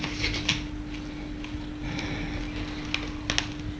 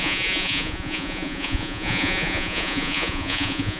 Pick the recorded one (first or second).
first